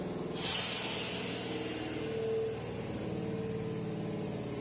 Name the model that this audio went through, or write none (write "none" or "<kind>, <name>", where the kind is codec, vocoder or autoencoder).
none